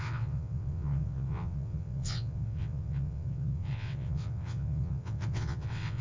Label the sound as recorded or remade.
remade